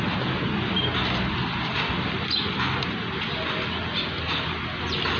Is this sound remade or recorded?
recorded